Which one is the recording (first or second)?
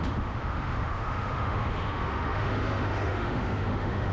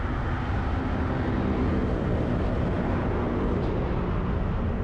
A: second